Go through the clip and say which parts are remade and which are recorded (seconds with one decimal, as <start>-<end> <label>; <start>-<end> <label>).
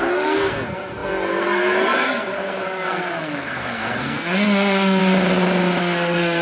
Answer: 0.0-5.0 remade; 5.0-5.8 recorded; 5.8-6.4 remade